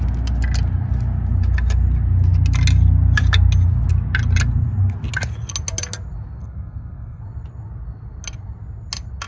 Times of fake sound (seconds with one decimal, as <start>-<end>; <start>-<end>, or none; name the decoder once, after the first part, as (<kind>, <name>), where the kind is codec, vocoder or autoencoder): 6.4-7.2 (codec, SNAC)